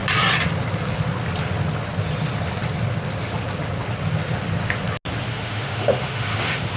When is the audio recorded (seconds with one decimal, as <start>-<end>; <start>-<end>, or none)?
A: 0.0-5.3

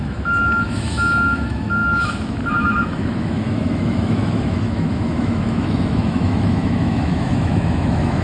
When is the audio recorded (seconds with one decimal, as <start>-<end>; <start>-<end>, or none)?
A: none

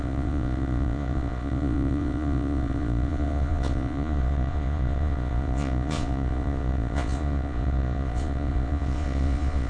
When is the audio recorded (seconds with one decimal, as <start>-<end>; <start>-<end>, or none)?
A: none

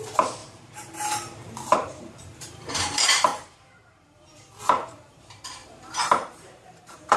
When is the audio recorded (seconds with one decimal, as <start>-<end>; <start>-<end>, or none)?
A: none

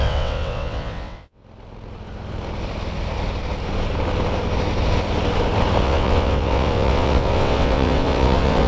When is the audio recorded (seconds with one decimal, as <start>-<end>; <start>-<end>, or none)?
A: 1.4-5.8

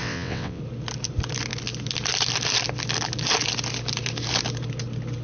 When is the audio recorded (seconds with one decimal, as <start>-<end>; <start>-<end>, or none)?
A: 0.6-5.2

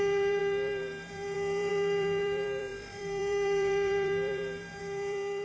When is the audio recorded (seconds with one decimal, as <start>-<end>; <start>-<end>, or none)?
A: none